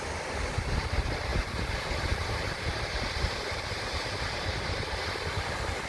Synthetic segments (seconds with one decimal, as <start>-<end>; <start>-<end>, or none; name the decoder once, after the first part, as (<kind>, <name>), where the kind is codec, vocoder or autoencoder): 1.3-4.8 (vocoder, BigVGAN v2)